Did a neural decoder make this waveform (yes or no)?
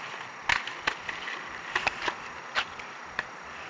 no